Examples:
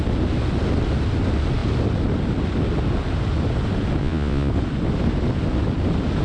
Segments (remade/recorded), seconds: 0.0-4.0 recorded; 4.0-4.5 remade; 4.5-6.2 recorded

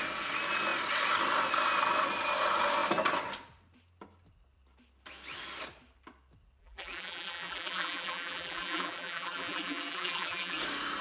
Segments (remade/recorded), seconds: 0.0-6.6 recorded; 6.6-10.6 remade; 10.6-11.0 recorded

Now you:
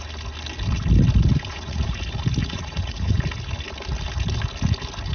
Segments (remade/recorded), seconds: 0.0-1.5 recorded; 1.5-2.0 remade; 2.0-2.4 recorded; 2.4-3.2 remade; 3.2-5.1 recorded

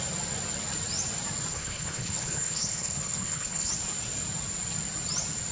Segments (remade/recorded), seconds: 0.0-1.5 recorded; 1.5-3.7 remade; 3.7-5.5 recorded

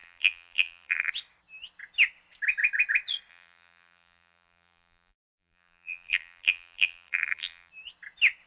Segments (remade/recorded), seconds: 0.0-1.1 remade; 1.1-3.3 recorded; 3.3-7.7 remade; 7.7-8.5 recorded

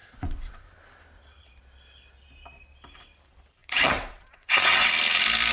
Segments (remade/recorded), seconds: 0.0-0.6 remade; 0.6-3.6 recorded; 3.6-4.9 remade; 4.9-5.5 recorded

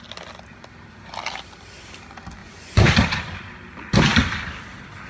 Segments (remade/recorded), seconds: 0.0-2.4 recorded; 2.4-2.9 remade; 2.9-5.1 recorded